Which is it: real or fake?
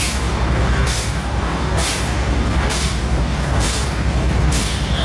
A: fake